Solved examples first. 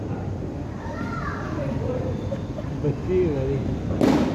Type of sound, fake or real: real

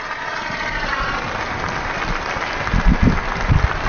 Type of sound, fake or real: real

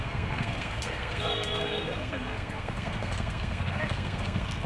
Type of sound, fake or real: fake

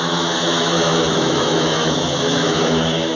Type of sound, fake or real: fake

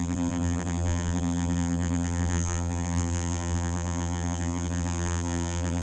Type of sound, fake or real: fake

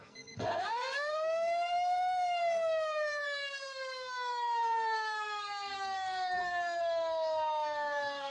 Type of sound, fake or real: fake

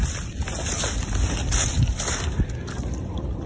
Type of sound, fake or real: real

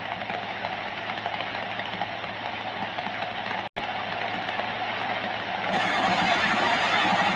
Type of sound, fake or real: real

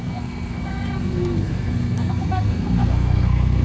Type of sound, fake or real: fake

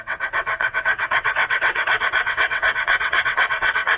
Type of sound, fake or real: fake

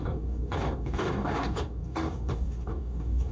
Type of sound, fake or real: fake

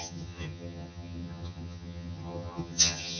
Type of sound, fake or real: fake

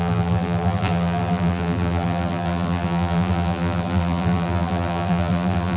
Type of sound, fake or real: fake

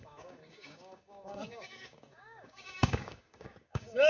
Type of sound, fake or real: fake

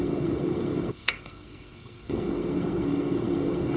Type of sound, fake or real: fake